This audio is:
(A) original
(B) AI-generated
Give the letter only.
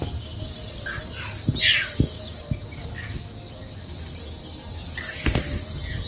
A